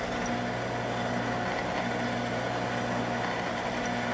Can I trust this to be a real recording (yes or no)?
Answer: yes